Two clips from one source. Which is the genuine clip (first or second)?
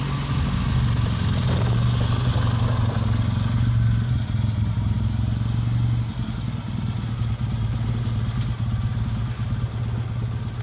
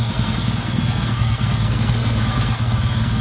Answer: first